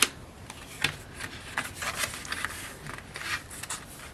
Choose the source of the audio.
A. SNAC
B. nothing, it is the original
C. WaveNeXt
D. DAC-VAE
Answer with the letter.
B